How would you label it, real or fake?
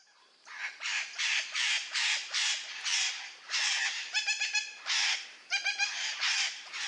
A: fake